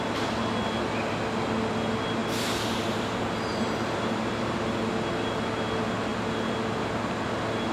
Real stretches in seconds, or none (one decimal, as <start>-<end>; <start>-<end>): 0.0-2.2; 3.1-3.5; 4.3-7.7